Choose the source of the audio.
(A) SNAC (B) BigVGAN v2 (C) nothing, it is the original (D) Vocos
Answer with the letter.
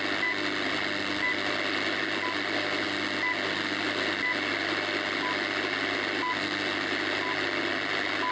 C